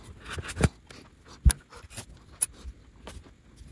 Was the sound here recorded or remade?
recorded